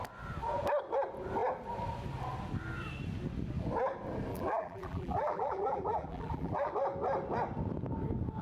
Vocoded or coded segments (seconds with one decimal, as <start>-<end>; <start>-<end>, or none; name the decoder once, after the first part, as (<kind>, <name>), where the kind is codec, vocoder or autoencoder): 4.3-6.7 (vocoder, BigVGAN v2)